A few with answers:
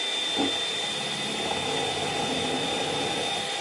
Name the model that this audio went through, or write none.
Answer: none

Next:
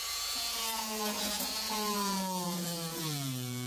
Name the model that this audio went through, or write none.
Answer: vocoder, Vocos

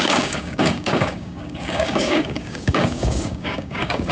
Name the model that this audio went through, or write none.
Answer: codec, DAC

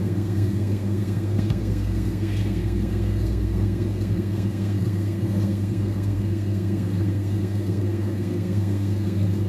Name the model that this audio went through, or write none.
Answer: codec, SNAC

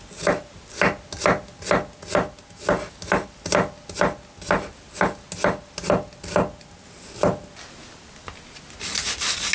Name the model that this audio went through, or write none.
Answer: none